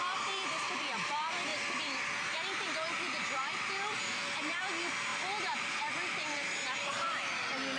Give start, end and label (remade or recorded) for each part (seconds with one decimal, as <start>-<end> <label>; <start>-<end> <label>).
0.0-7.8 recorded